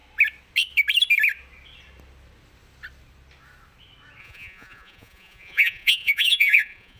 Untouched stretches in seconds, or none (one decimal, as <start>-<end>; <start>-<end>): 0.0-4.2